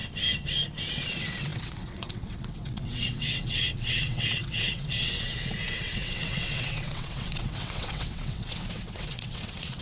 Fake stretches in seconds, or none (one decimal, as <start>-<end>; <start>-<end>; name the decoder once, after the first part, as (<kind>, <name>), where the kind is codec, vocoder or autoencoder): 0.9-9.8 (vocoder, WaveNeXt)